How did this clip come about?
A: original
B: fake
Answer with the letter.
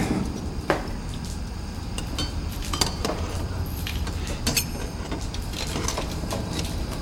B